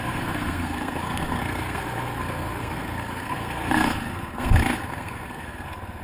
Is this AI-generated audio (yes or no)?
yes